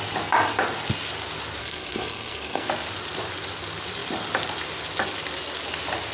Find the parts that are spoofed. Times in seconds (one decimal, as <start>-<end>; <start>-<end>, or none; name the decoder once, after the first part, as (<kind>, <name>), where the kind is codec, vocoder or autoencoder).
1.6-2.7 (codec, SNAC)